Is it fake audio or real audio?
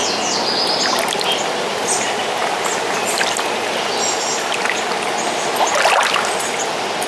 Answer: real